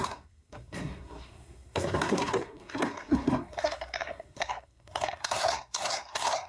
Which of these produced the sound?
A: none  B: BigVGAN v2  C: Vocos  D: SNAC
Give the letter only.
D